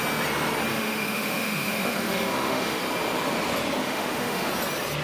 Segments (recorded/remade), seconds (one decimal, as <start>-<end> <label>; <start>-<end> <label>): 0.0-0.7 recorded; 0.7-2.8 remade; 2.8-3.8 recorded; 3.8-4.5 remade; 4.5-5.0 recorded